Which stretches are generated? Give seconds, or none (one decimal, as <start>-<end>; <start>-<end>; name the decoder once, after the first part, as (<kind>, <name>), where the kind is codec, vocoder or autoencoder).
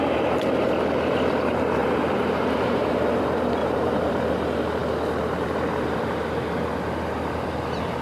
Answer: 1.8-3.2 (vocoder, BigVGAN v2); 3.6-4.1